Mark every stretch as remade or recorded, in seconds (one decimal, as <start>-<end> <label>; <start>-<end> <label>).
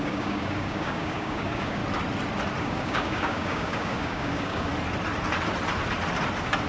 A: 0.0-1.8 remade; 1.8-2.6 recorded; 2.6-4.7 remade; 4.7-6.7 recorded